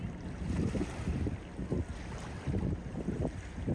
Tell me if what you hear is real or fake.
real